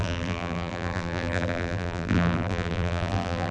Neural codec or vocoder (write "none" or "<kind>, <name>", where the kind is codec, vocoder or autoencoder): vocoder, BigVGAN v2